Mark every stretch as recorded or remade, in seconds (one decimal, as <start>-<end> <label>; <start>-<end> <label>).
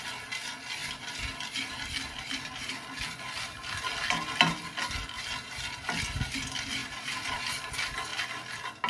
0.0-0.8 recorded; 0.8-3.9 remade; 3.9-6.8 recorded; 6.8-7.4 remade; 7.4-8.9 recorded